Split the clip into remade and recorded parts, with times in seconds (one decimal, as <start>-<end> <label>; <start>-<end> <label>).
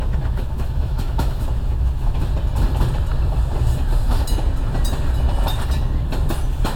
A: 0.0-2.3 remade; 2.3-6.8 recorded